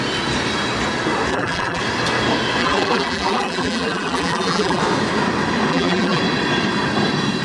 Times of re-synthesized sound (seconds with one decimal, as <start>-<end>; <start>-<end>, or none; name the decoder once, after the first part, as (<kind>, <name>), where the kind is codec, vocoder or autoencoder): 1.3-1.8 (vocoder, BigVGAN v2); 2.6-4.8; 5.7-6.2